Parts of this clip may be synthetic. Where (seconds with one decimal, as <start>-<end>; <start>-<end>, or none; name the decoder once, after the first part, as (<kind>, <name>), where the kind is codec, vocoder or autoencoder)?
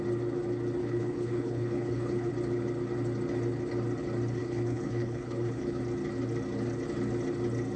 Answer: 0.8-2.3 (codec, HILCodec); 4.4-5.8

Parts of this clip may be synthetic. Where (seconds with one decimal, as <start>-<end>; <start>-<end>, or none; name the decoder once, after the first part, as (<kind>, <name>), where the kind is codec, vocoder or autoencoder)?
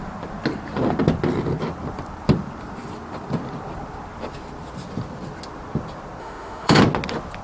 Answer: 6.2-6.8 (autoencoder, DAC-VAE)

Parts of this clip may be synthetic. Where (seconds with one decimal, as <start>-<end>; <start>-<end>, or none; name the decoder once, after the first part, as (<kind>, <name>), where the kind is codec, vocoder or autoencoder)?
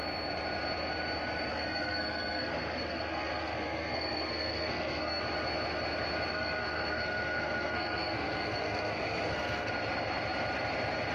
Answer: 1.5-5.2 (codec, SNAC); 6.3-9.7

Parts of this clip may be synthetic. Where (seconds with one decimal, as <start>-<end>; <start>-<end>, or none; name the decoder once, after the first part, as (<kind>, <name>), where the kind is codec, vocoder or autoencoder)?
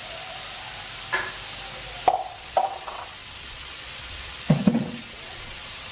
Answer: 2.3-5.9 (vocoder, WaveNeXt)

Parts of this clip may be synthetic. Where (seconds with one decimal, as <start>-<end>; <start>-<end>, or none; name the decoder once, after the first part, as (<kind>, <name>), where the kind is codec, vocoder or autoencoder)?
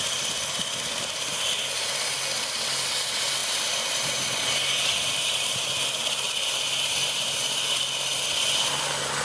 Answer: none